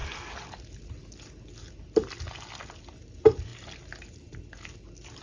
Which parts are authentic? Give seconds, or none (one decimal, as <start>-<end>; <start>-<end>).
0.0-5.2